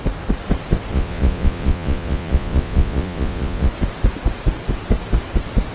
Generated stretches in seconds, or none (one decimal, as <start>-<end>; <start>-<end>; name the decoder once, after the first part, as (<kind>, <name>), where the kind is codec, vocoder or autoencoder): 0.9-3.7 (vocoder, Vocos)